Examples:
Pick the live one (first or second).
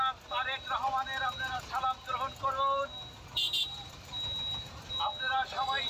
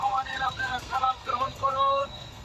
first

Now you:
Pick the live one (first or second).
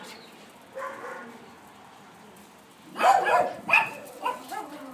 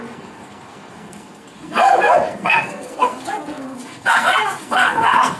first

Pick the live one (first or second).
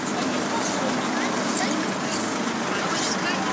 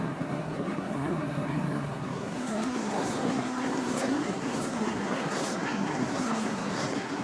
first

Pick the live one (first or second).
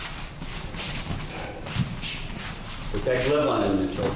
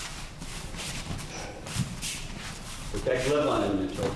first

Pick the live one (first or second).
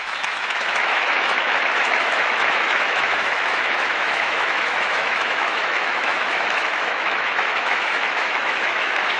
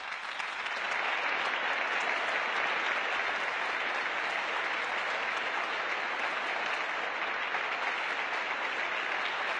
second